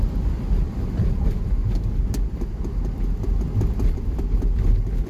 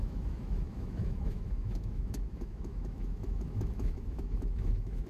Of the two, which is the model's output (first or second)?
second